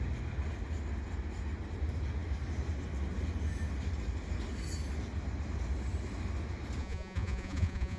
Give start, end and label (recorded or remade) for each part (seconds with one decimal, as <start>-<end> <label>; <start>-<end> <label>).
0.0-6.8 recorded; 6.8-8.0 remade